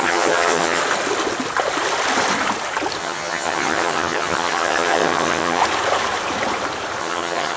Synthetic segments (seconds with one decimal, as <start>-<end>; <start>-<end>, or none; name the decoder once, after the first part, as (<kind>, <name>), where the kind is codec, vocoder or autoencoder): 0.0-0.8 (vocoder, HiFi-GAN); 3.0-5.6; 7.0-7.6